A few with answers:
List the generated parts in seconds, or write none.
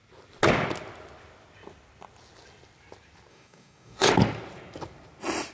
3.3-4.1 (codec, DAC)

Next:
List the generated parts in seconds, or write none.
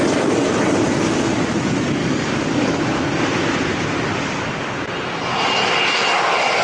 2.0-2.8 (codec, DAC)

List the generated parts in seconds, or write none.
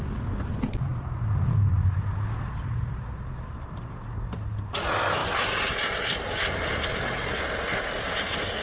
none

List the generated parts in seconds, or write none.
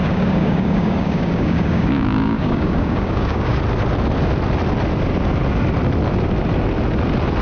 0.0-3.6 (codec, DAC)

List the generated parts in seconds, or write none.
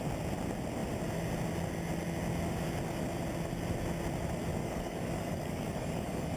4.6-6.4 (codec, DAC)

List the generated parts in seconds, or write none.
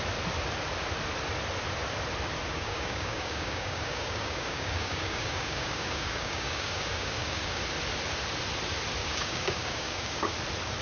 2.5-7.6 (codec, DAC); 9.0-10.3